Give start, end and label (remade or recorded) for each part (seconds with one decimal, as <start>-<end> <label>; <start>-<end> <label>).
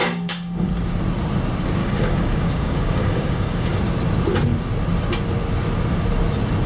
0.0-0.7 remade; 0.7-1.8 recorded; 1.8-3.8 remade; 3.8-6.7 recorded